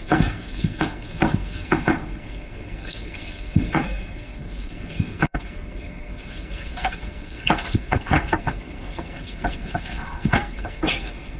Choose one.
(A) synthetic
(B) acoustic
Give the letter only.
A